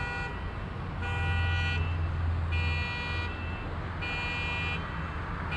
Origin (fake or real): real